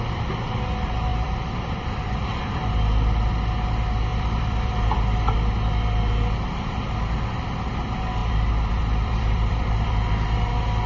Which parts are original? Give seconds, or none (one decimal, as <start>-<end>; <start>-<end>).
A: 0.0-1.1; 2.5-4.1; 5.3-8.2; 10.5-10.9